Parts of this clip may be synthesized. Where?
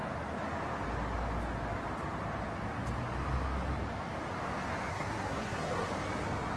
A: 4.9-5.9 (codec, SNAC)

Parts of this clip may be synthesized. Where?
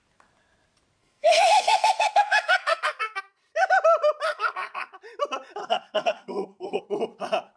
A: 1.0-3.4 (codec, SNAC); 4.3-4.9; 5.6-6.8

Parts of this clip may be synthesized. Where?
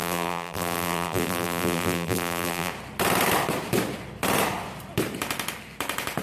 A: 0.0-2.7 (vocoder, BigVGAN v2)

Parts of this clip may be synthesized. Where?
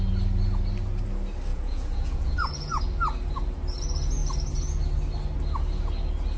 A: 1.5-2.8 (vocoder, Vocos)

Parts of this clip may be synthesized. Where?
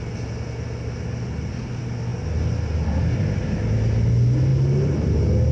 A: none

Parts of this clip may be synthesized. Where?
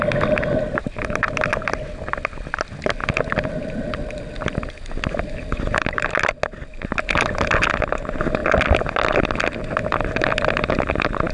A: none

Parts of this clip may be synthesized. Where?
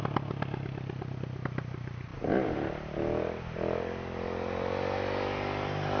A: none